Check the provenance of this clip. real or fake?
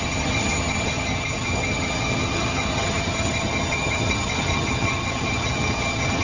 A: fake